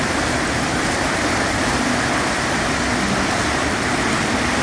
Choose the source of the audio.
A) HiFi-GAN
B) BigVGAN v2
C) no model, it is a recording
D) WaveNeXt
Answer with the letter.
C